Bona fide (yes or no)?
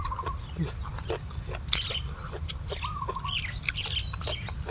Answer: yes